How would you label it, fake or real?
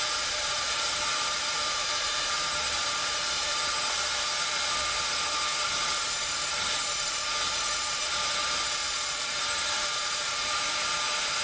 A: fake